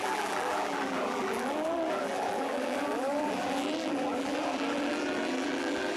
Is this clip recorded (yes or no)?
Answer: no